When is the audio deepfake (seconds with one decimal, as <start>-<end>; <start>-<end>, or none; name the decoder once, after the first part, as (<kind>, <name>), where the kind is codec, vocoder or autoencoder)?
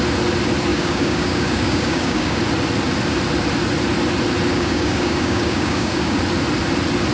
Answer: 0.7-2.4 (codec, DAC); 4.5-6.2